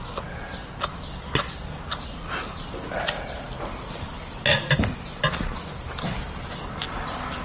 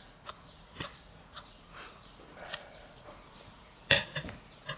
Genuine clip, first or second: first